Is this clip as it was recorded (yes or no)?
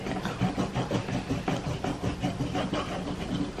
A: yes